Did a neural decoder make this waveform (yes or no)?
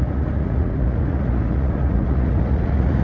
yes